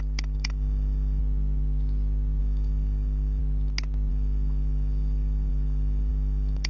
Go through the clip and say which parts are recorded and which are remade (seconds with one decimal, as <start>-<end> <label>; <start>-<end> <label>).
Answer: 0.0-1.2 remade; 1.2-2.4 recorded; 2.4-3.4 remade; 3.4-4.1 recorded; 4.1-6.7 remade